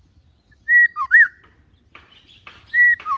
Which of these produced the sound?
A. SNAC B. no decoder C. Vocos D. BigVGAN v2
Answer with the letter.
B